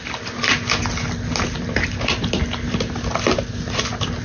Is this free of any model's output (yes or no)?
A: yes